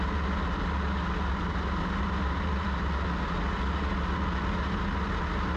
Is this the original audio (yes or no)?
yes